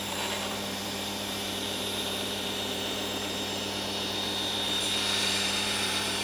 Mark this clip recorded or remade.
remade